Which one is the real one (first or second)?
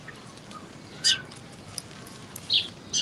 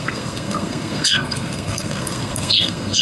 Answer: first